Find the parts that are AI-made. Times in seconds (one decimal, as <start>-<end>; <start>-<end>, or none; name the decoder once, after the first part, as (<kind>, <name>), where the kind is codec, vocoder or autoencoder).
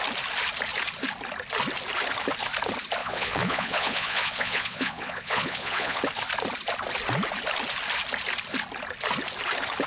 3.0-6.0 (vocoder, Vocos)